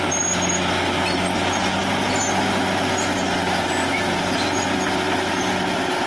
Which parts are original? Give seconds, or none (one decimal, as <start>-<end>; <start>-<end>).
0.0-6.1